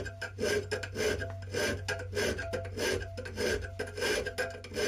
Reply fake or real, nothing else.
real